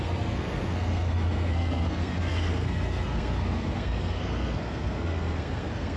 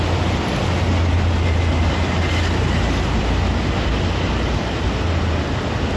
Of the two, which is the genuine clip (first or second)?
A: second